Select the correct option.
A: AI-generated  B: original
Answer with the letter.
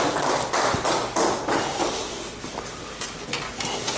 B